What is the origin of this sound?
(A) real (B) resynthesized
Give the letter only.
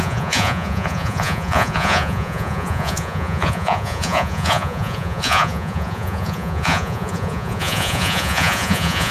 B